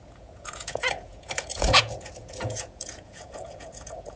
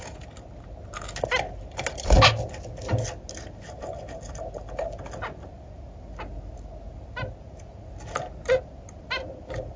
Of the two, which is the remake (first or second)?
first